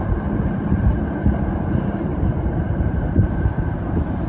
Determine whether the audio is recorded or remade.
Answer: remade